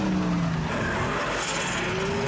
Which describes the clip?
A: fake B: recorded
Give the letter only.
B